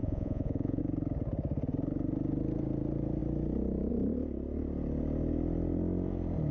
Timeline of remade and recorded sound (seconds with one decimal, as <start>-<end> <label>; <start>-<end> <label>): 0.0-0.8 remade; 0.8-6.5 recorded